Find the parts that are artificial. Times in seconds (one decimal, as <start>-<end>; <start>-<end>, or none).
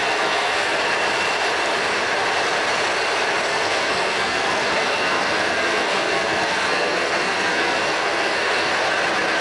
0.0-0.8; 3.5-8.7